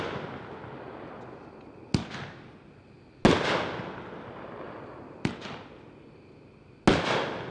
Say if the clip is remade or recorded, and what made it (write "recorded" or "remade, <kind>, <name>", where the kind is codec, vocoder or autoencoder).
recorded